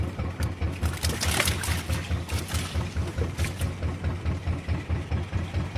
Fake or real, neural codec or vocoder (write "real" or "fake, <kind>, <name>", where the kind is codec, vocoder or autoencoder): fake, vocoder, BigVGAN v2